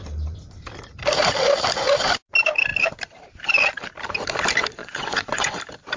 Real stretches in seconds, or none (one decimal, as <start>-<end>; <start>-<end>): 0.0-4.8; 5.6-6.0